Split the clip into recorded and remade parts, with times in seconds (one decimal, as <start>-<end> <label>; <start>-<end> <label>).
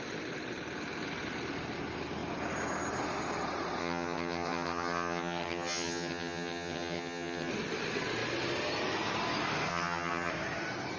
0.0-3.8 recorded; 3.8-7.5 remade; 7.5-9.7 recorded; 9.7-10.3 remade; 10.3-11.0 recorded